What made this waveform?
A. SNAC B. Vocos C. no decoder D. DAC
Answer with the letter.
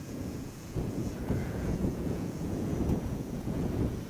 B